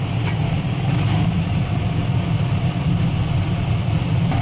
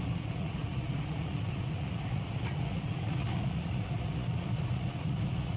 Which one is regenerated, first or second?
second